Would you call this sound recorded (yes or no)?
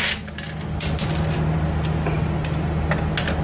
yes